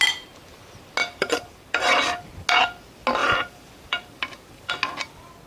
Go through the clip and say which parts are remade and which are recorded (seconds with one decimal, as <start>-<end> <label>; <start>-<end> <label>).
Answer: 0.0-1.0 recorded; 1.0-2.2 remade; 2.2-3.2 recorded; 3.2-4.7 remade; 4.7-5.5 recorded